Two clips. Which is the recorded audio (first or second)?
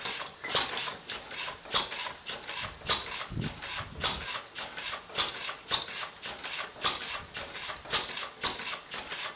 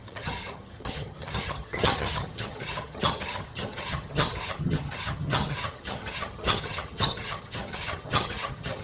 first